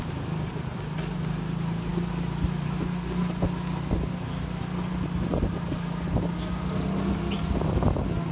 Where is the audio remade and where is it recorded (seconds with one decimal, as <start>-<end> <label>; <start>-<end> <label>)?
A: 0.0-8.3 recorded

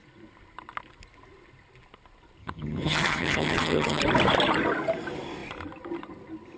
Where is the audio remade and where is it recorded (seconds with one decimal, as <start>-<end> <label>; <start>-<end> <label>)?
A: 0.0-2.4 recorded; 2.4-4.0 remade; 4.0-6.6 recorded

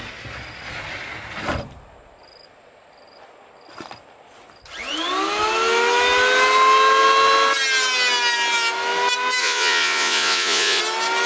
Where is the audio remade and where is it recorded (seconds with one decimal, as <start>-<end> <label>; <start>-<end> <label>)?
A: 0.0-9.4 recorded; 9.4-10.8 remade; 10.8-11.3 recorded

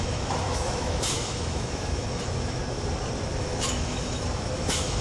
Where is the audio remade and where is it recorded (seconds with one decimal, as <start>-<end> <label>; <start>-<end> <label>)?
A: 0.0-2.6 remade; 2.6-3.4 recorded; 3.4-5.0 remade

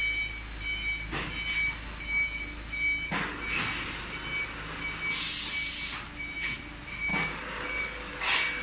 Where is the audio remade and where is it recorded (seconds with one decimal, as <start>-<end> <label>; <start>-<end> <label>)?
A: 0.0-7.1 recorded; 7.1-8.1 remade; 8.1-8.6 recorded

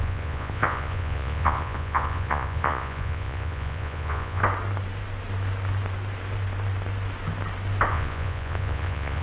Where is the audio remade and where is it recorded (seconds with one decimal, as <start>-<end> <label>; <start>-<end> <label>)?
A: 0.0-4.4 remade; 4.4-7.9 recorded; 7.9-9.2 remade